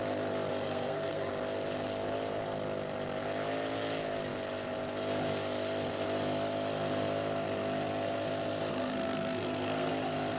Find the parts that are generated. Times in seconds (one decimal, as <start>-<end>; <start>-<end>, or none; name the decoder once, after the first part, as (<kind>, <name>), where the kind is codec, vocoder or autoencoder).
0.6-1.3 (codec, SNAC); 8.7-9.9